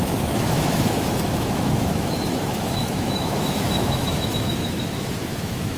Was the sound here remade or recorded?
remade